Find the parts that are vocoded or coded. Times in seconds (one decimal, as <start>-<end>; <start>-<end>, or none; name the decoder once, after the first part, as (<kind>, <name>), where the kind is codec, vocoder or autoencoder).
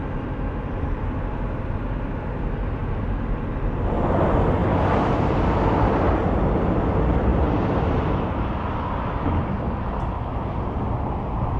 none